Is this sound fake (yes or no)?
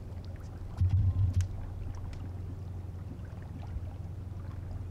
no